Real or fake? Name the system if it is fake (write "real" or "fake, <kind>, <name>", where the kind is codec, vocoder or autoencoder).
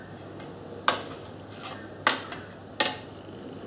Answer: real